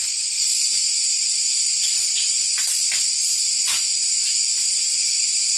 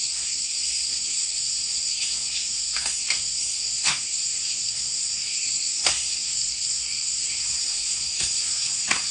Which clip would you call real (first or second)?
first